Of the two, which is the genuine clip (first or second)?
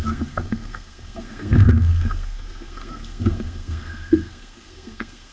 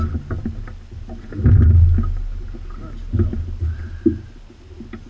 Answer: second